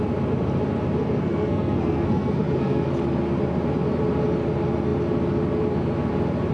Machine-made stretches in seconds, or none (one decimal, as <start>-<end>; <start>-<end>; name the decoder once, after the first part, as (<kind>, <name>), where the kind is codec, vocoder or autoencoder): 1.0-2.9 (codec, SNAC)